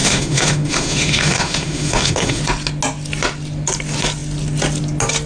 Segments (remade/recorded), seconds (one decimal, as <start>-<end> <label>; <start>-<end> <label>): 0.0-2.4 remade; 2.4-5.3 recorded